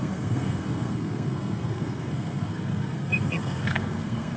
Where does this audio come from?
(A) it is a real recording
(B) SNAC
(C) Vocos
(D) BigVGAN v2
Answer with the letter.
B